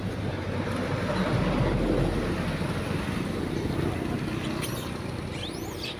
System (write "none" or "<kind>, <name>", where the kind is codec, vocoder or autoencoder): none